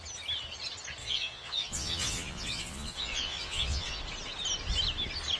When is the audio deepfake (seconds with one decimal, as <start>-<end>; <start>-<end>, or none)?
1.0-4.0